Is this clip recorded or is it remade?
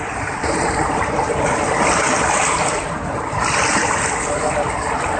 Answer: recorded